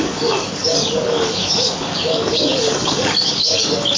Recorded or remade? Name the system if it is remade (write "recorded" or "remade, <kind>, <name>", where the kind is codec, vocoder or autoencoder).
remade, codec, DAC